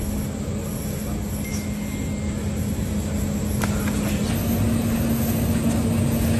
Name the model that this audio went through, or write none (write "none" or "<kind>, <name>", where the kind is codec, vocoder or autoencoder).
none